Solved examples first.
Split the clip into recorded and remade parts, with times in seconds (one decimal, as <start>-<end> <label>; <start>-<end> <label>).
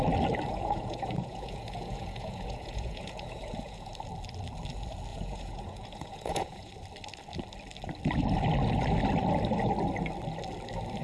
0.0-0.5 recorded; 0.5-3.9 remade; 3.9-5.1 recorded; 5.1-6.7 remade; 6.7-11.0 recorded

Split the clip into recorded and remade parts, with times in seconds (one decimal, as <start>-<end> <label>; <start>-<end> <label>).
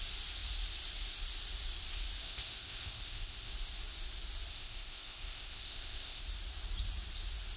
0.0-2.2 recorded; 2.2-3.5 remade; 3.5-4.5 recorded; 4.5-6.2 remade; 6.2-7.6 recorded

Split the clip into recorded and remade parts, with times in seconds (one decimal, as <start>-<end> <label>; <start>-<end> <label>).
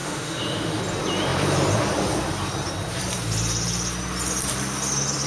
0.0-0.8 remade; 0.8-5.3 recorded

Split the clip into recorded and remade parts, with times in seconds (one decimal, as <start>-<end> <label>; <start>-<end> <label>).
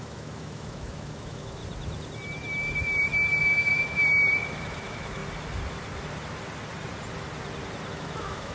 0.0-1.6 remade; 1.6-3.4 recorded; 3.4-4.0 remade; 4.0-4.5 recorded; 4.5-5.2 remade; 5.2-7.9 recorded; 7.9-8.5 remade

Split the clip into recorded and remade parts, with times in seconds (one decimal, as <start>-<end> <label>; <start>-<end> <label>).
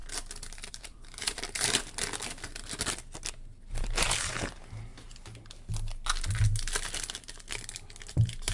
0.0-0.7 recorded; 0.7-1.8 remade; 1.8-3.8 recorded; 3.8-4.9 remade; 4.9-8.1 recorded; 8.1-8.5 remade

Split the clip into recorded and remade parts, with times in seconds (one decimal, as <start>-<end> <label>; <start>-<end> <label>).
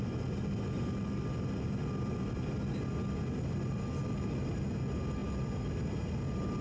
0.0-6.6 recorded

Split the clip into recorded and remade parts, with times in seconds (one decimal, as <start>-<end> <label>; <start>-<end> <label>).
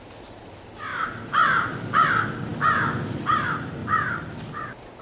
0.0-0.9 recorded; 0.9-2.1 remade; 2.1-2.5 recorded; 2.5-3.3 remade; 3.3-3.8 recorded; 3.8-5.0 remade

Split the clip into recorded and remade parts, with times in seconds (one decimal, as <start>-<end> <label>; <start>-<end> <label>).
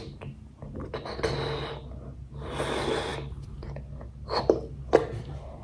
0.0-5.6 recorded